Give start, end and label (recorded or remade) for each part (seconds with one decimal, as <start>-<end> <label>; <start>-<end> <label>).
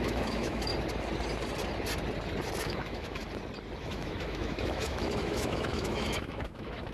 0.0-0.7 remade; 0.7-2.6 recorded; 2.6-3.2 remade; 3.2-3.8 recorded; 3.8-6.9 remade